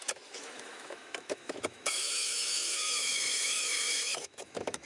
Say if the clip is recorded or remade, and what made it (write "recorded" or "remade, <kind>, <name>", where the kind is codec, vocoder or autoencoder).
remade, autoencoder, DAC-VAE